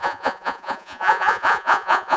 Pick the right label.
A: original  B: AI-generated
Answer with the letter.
B